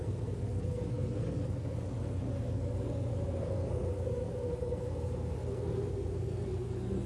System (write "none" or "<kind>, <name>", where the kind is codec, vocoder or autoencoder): codec, SNAC